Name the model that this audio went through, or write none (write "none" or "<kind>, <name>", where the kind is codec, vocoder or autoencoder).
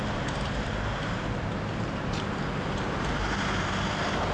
none